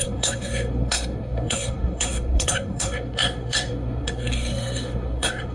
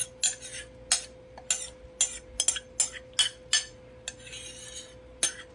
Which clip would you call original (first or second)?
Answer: second